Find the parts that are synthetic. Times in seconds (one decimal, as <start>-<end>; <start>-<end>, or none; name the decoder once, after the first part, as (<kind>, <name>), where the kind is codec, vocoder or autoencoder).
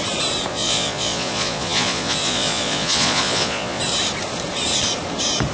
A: 0.5-3.8 (vocoder, Vocos)